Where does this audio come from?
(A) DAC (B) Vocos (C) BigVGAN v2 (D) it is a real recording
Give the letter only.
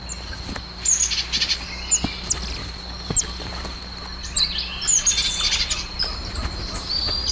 D